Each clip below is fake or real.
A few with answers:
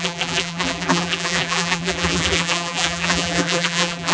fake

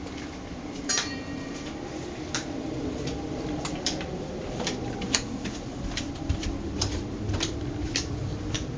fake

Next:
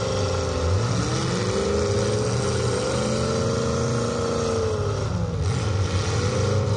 real